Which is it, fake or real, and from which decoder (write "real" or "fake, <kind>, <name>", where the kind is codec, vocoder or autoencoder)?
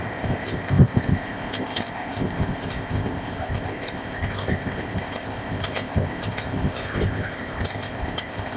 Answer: fake, codec, ZipCodec